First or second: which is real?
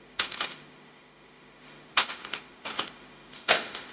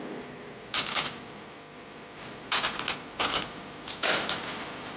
second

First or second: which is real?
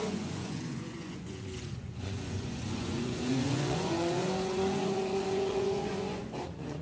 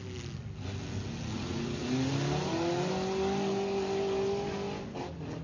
second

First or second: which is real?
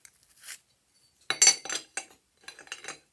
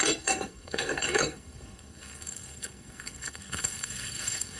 first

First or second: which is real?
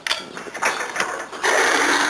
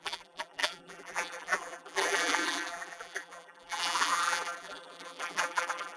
first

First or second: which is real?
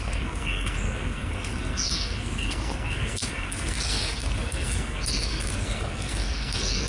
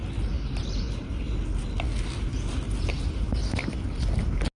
second